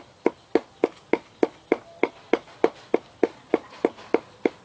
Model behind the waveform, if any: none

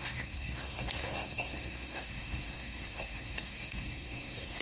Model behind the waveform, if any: codec, SNAC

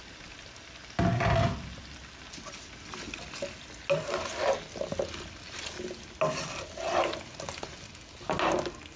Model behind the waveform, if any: none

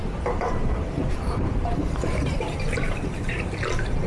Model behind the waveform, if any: vocoder, BigVGAN v2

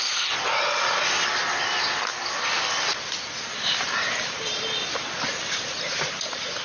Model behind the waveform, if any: none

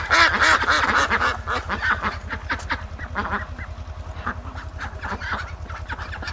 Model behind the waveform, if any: none